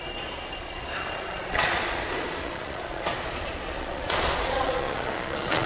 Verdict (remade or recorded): remade